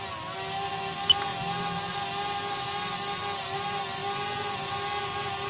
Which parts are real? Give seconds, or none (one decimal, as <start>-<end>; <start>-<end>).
0.0-5.5